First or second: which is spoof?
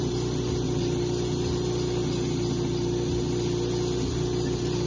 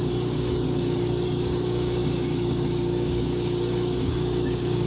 second